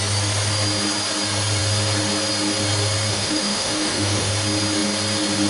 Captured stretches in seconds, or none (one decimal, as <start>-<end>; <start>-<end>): 0.0-3.1; 4.3-5.5